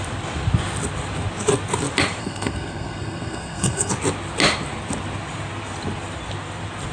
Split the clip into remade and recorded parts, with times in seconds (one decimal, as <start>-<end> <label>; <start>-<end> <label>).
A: 0.0-2.2 recorded; 2.2-3.9 remade; 3.9-6.9 recorded

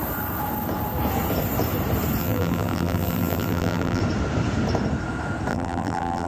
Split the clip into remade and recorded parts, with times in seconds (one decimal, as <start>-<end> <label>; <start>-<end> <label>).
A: 0.0-2.2 recorded; 2.2-4.0 remade; 4.0-5.5 recorded; 5.5-6.3 remade

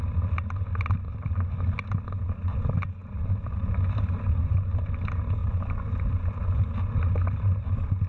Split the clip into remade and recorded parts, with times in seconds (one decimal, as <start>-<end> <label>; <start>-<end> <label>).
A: 0.0-5.4 recorded; 5.4-6.8 remade; 6.8-8.1 recorded

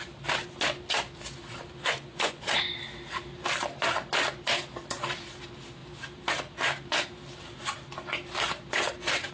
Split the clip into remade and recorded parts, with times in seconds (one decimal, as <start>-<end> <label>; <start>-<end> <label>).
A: 0.0-1.8 recorded; 1.8-2.4 remade; 2.4-9.3 recorded

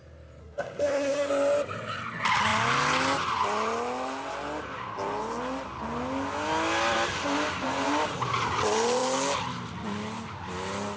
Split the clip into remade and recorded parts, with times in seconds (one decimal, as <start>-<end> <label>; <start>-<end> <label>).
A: 0.0-0.4 recorded; 0.4-1.3 remade; 1.3-11.0 recorded